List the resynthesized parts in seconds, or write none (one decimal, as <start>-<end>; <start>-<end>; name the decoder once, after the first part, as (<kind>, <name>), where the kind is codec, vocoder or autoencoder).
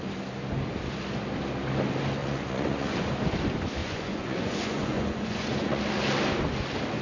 2.2-3.1 (vocoder, Vocos); 3.8-5.8